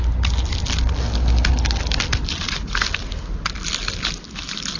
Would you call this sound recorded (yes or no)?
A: yes